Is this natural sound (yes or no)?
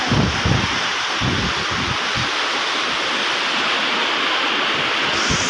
yes